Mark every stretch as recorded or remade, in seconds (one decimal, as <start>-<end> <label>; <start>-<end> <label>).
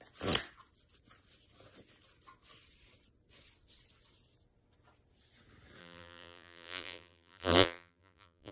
0.0-5.8 recorded; 5.8-8.5 remade